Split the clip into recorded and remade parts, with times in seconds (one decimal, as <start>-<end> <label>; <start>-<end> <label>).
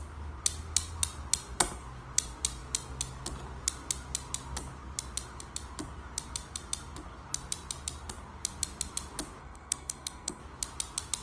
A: 0.0-9.4 recorded; 9.4-10.4 remade; 10.4-11.2 recorded